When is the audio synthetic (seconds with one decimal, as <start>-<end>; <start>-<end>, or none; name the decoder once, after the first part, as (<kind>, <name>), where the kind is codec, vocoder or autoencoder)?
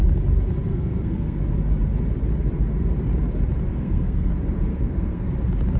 0.7-1.4 (codec, SNAC); 3.7-4.3; 4.7-5.3